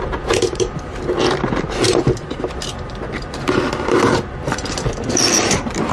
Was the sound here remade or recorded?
remade